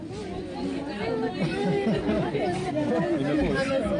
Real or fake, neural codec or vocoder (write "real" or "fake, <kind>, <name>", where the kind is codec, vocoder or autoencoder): real